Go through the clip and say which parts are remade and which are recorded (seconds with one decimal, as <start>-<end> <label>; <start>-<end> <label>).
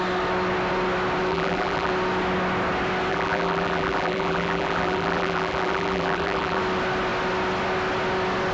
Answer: 0.0-1.3 recorded; 1.3-1.9 remade; 1.9-3.1 recorded; 3.1-6.6 remade; 6.6-8.5 recorded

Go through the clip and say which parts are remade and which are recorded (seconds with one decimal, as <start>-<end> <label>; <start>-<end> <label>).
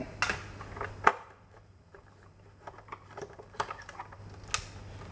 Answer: 0.0-1.1 recorded; 1.1-4.2 remade; 4.2-5.1 recorded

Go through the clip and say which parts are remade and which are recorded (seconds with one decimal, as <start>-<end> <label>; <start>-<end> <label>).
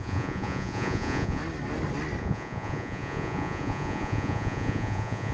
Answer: 0.0-1.4 remade; 1.4-2.2 recorded; 2.2-5.3 remade